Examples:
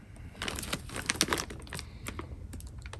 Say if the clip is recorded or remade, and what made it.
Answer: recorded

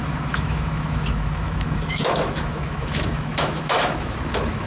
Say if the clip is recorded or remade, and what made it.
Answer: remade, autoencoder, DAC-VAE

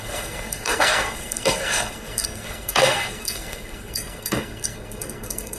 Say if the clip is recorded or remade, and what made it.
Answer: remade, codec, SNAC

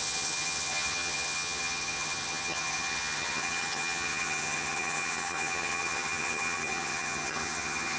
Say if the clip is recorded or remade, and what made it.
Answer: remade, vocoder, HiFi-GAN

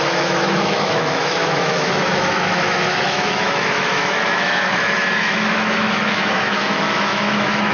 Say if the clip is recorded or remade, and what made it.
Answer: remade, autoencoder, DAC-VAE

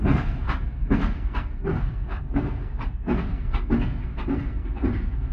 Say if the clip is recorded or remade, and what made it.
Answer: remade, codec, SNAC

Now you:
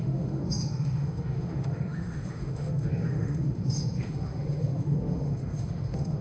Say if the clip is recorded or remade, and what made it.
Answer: remade, autoencoder, DAC-VAE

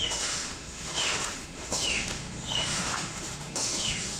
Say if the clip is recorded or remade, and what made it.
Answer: remade, autoencoder, DAC-VAE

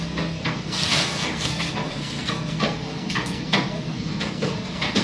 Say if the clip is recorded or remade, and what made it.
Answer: remade, codec, SNAC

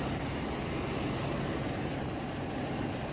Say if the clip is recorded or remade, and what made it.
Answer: recorded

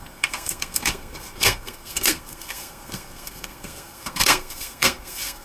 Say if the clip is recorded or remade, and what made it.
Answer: remade, codec, SNAC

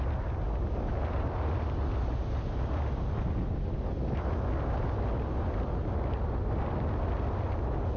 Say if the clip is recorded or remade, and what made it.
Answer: recorded